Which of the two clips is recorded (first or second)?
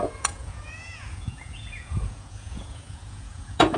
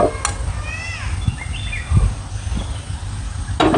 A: second